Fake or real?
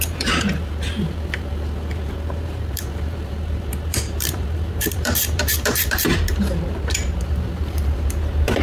fake